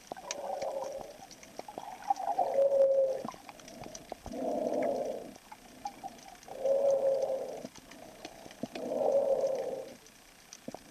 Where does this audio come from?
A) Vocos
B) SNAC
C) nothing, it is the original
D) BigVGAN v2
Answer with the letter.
C